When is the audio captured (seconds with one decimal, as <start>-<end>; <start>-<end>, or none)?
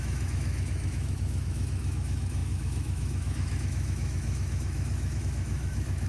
none